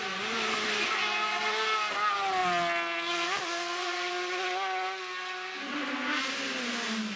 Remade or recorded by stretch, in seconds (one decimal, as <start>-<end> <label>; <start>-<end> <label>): 0.0-7.2 recorded